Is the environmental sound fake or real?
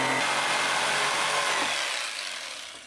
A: real